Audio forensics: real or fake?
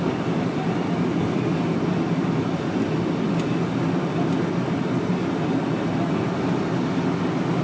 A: real